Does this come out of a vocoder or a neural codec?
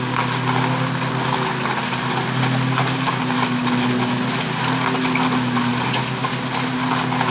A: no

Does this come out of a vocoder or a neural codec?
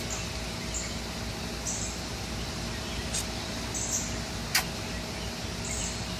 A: no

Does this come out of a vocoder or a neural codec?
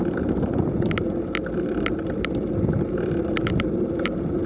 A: no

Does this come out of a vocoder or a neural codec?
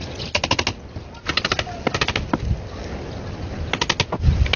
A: no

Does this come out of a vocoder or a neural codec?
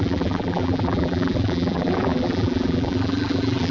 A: yes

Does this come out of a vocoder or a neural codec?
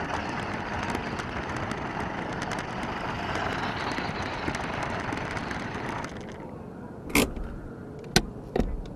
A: no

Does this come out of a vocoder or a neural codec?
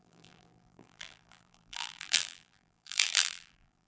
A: yes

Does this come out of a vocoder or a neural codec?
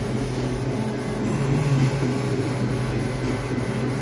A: no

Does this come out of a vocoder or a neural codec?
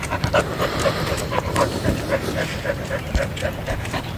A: yes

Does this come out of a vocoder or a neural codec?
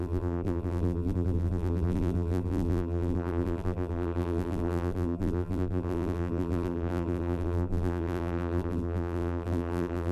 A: yes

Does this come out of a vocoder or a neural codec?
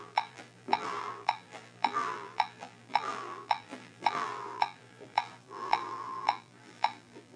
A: yes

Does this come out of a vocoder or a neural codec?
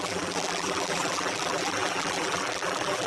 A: yes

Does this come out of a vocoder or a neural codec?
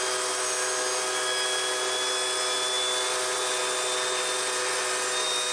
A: no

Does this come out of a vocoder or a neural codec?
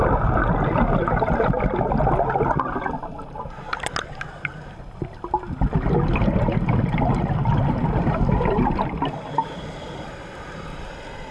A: no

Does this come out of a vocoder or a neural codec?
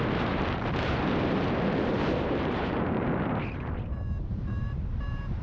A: yes